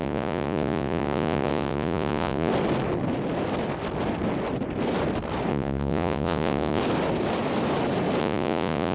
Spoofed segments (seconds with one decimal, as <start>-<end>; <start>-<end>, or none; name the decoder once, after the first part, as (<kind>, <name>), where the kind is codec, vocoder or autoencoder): 0.0-2.5 (vocoder, Vocos); 5.5-6.8; 8.2-8.9